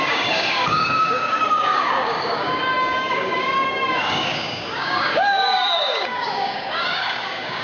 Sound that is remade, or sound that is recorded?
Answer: remade